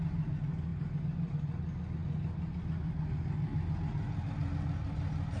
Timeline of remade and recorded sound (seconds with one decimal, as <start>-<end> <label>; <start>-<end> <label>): 0.0-5.4 recorded